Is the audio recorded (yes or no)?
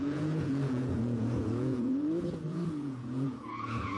no